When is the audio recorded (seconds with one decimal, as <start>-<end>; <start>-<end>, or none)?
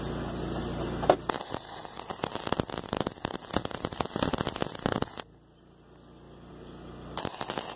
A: 0.0-7.8